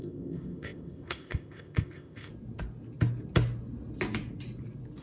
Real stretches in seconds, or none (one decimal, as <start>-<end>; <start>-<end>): 2.3-5.0